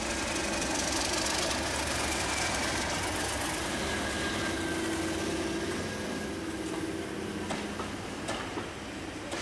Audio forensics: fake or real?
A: real